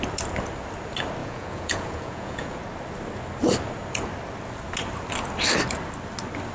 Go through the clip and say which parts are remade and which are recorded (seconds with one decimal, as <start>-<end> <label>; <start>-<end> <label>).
0.0-1.2 recorded; 1.2-2.6 remade; 2.6-6.5 recorded